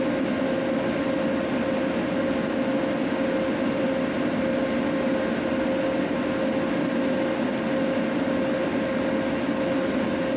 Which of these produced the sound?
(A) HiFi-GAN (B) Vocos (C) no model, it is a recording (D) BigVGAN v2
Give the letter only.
C